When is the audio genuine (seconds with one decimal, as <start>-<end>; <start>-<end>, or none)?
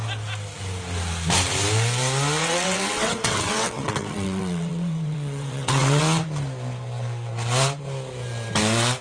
0.0-2.4; 6.0-9.0